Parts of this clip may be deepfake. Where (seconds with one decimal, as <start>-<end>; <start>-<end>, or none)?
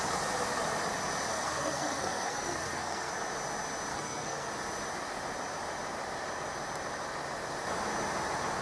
1.3-3.1; 3.9-4.5